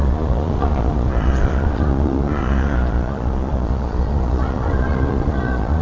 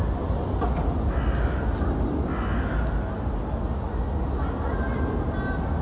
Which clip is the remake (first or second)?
first